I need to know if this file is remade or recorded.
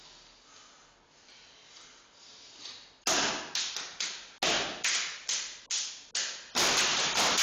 recorded